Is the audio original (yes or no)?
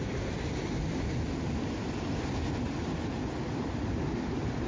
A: yes